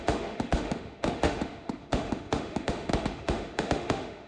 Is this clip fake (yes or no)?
yes